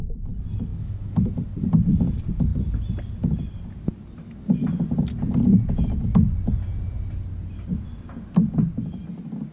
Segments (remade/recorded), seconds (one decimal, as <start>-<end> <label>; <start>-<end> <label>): 0.0-0.7 recorded; 0.7-1.3 remade; 1.3-9.5 recorded